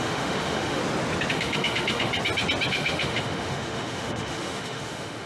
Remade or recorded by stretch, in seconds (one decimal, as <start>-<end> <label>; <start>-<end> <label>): 0.0-0.8 remade; 0.8-1.3 recorded; 1.3-2.1 remade; 2.1-2.7 recorded; 2.7-5.3 remade